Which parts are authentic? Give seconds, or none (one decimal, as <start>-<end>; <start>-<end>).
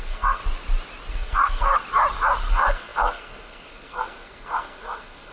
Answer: 0.4-1.1; 1.7-2.5